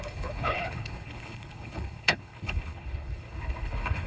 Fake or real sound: fake